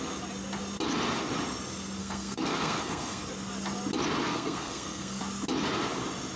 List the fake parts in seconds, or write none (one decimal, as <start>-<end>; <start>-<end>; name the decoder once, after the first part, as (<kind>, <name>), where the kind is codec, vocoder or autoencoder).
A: 2.0-3.3 (codec, SNAC); 4.2-5.2